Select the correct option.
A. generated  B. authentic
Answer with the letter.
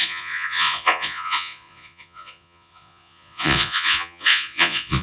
A